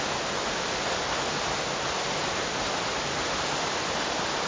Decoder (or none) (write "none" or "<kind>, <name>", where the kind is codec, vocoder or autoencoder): none